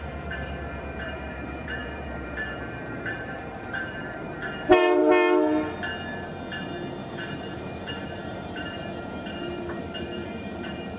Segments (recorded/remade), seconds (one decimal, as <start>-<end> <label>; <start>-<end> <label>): 0.0-5.0 remade; 5.0-7.1 recorded; 7.1-8.8 remade; 8.8-9.4 recorded; 9.4-11.0 remade